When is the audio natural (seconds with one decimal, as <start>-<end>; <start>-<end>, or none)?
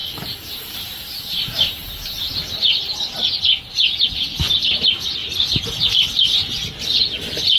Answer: 3.1-7.6